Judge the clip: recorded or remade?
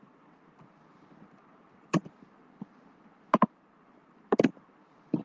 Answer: remade